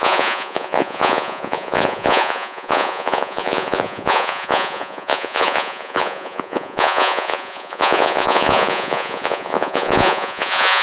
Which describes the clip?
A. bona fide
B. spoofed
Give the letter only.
B